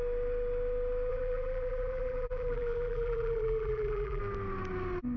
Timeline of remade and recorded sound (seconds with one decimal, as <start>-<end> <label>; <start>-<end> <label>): 0.0-1.1 recorded; 1.1-4.2 remade; 4.2-5.2 recorded